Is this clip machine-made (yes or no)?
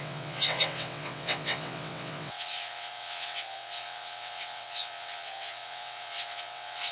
yes